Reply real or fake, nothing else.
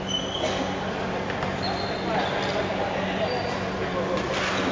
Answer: real